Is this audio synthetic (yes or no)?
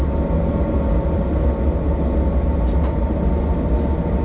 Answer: no